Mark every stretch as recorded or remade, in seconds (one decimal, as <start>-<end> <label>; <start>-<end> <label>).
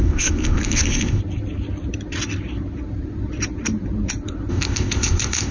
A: 0.0-1.2 remade; 1.2-4.5 recorded; 4.5-5.5 remade